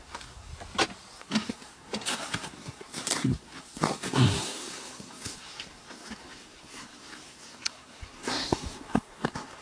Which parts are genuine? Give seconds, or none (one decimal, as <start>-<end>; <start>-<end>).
0.5-1.2